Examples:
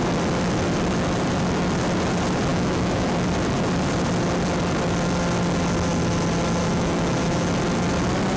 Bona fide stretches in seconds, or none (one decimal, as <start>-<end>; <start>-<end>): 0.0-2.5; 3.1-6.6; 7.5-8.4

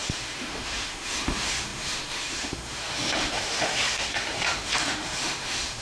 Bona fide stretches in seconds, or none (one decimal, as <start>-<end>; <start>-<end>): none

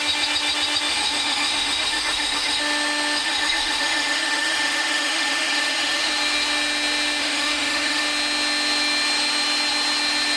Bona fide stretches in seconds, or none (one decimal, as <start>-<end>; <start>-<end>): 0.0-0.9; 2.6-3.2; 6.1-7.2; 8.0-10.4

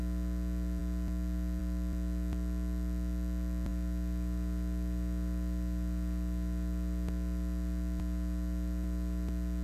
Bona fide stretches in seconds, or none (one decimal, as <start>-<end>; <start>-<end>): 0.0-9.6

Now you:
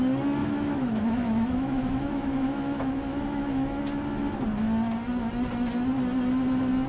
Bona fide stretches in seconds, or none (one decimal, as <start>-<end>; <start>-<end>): 0.0-0.4; 3.8-6.9

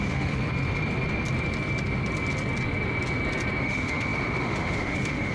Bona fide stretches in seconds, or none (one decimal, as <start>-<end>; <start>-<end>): 0.4-3.6